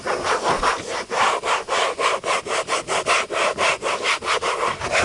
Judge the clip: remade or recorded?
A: recorded